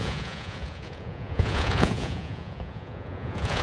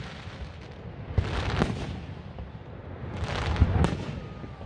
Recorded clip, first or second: second